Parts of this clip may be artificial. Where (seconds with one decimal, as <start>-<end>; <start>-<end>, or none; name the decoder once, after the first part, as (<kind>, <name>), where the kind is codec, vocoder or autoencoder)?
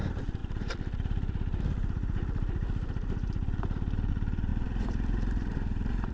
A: 0.0-6.1 (vocoder, BigVGAN v2)